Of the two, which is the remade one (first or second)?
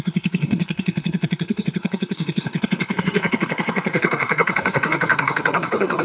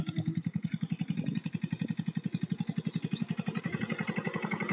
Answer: first